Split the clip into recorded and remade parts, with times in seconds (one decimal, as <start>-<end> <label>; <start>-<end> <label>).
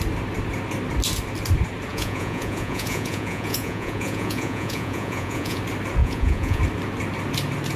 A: 0.0-1.9 recorded; 1.9-5.6 remade; 5.6-6.0 recorded; 6.0-6.6 remade; 6.6-7.8 recorded